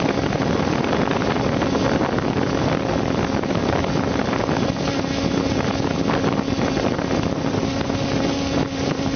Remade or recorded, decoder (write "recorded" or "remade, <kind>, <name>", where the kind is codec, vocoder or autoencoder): recorded